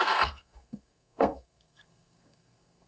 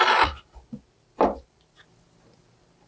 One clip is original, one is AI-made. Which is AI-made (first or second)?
first